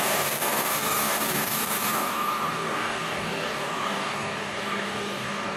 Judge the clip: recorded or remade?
remade